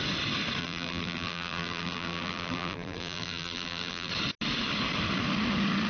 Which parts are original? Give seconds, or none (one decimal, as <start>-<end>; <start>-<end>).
0.0-0.6; 4.1-5.9